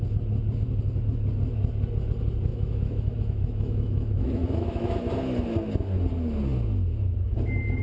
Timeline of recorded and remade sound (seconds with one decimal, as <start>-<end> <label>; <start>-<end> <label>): 0.0-2.5 recorded; 2.5-5.1 remade; 5.1-7.8 recorded